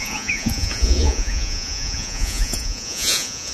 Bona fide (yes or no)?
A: no